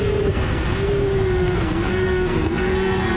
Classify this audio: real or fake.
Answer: fake